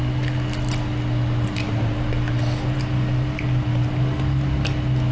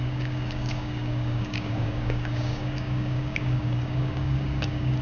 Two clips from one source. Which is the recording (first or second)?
first